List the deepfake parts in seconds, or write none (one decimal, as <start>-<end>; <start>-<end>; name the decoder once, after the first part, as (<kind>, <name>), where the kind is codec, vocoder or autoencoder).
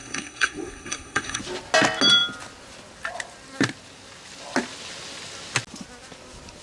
0.0-1.4 (codec, SNAC)